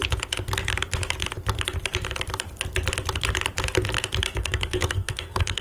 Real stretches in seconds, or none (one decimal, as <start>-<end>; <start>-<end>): 0.0-4.4